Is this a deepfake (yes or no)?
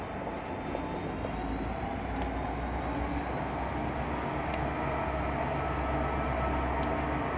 no